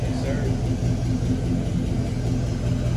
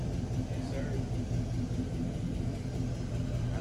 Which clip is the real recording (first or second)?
first